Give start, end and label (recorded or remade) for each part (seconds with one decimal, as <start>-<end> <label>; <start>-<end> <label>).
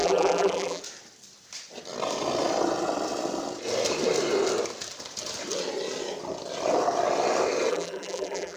0.0-0.8 remade; 0.8-7.7 recorded; 7.7-8.6 remade